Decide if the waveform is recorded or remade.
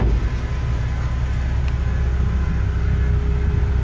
recorded